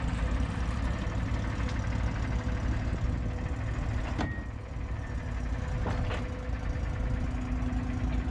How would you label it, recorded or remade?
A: recorded